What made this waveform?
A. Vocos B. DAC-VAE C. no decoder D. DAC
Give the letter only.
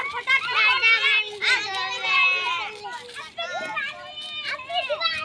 C